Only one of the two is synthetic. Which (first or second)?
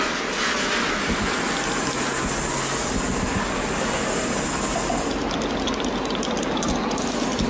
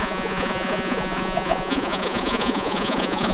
second